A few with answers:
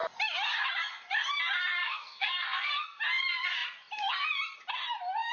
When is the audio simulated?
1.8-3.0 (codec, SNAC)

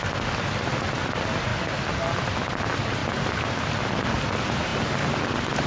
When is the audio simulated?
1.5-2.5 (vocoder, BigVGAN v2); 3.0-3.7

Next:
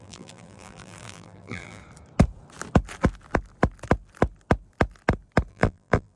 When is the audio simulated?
0.0-1.8 (vocoder, BigVGAN v2); 5.5-6.2

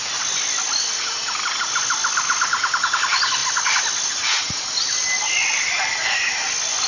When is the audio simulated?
none